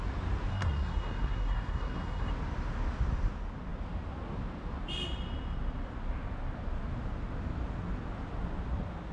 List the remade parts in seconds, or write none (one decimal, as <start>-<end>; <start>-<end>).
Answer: 0.5-2.3